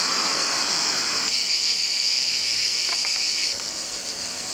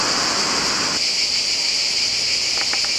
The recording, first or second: second